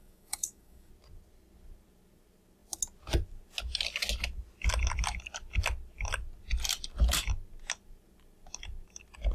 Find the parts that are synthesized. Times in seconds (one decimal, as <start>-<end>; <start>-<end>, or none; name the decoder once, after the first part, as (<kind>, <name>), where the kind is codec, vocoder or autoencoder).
0.0-0.9 (codec, DAC)